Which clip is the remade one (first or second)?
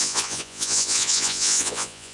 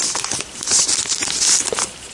first